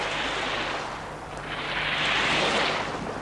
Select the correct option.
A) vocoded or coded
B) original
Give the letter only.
B